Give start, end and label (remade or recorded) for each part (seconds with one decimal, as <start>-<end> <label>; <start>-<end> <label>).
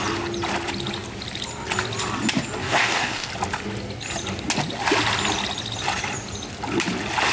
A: 0.0-2.6 recorded; 2.6-3.3 remade; 3.3-7.3 recorded